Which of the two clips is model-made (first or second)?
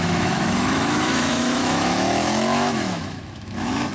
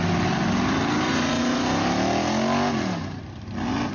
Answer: first